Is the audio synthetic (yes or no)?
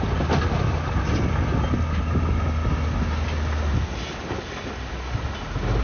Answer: no